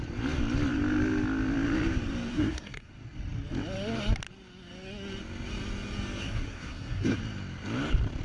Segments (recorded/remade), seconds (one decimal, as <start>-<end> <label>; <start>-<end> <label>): 0.0-2.3 recorded; 2.3-2.9 remade; 2.9-6.2 recorded; 6.2-7.2 remade; 7.2-8.2 recorded